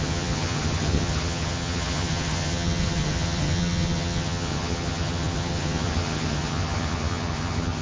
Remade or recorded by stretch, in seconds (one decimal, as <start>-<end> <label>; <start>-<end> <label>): 0.0-7.8 remade